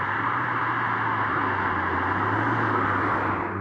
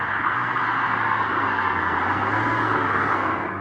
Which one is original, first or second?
first